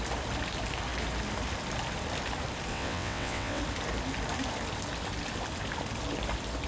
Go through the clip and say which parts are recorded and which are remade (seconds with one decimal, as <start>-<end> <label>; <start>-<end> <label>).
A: 0.0-2.7 recorded; 2.7-3.6 remade; 3.6-6.7 recorded